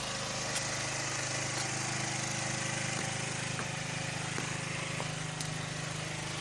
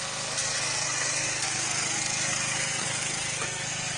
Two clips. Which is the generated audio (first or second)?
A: second